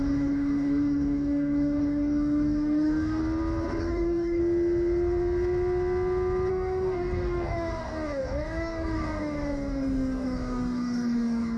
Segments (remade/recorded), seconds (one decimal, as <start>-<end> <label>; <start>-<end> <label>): 0.0-3.2 remade; 3.2-3.8 recorded; 3.8-4.4 remade; 4.4-6.5 recorded; 6.5-11.6 remade